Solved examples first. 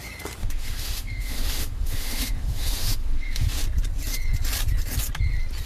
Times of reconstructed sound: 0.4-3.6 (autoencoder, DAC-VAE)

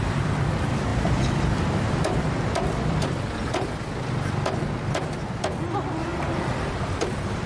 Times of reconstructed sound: 0.9-3.9 (vocoder, BigVGAN v2); 6.1-7.5

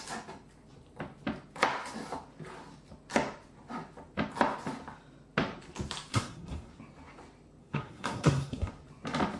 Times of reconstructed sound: 6.1-6.7 (codec, SNAC); 7.6-8.7

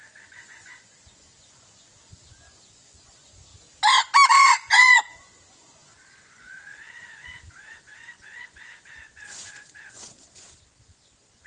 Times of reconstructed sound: 0.0-3.5 (vocoder, Vocos); 4.3-11.5

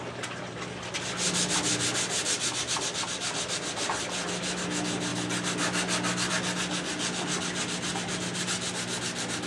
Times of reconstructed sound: none